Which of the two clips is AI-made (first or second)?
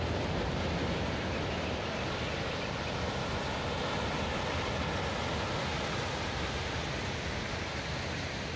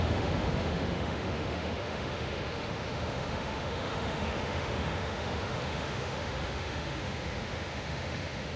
second